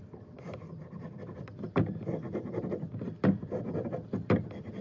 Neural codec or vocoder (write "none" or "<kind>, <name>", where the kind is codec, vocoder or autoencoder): vocoder, BigVGAN v2